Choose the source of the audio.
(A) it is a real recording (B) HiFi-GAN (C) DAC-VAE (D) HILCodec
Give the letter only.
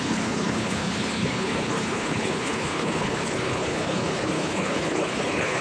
D